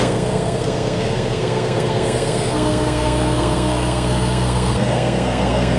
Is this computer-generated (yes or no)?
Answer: yes